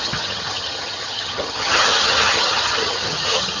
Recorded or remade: remade